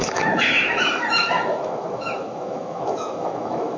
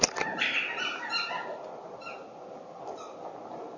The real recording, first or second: second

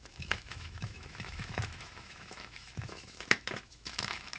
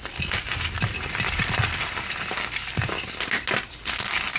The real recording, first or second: second